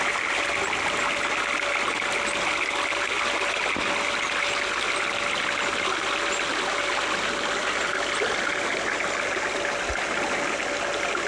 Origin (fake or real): real